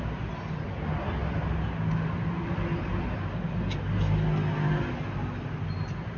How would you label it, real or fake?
real